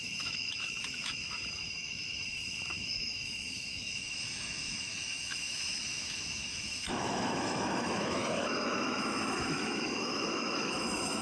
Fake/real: fake